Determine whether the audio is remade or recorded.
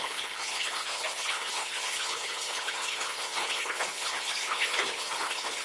remade